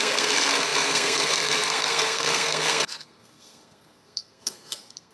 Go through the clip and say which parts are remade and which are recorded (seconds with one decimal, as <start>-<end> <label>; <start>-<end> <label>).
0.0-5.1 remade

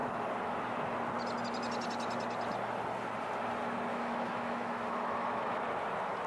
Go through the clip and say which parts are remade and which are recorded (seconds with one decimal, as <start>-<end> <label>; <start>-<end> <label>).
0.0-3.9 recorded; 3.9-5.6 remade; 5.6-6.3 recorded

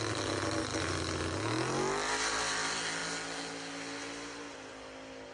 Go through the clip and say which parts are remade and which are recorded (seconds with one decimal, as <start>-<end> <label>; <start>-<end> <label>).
0.0-5.3 recorded